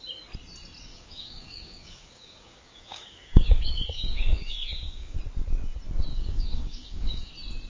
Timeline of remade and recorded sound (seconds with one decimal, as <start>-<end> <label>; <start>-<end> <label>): 0.0-0.9 recorded; 0.9-5.2 remade; 5.2-6.1 recorded; 6.1-7.3 remade; 7.3-7.7 recorded